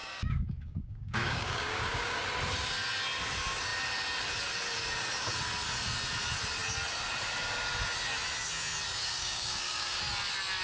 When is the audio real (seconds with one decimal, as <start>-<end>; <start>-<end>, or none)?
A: 2.2-9.0; 10.0-10.6